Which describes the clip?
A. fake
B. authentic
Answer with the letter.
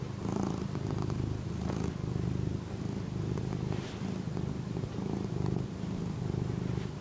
B